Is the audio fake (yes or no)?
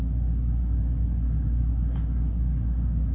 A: no